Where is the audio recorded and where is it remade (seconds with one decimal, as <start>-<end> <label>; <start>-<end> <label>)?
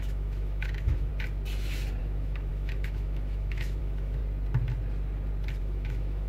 0.0-1.1 remade; 1.1-2.0 recorded; 2.0-4.2 remade; 4.2-5.6 recorded; 5.6-6.3 remade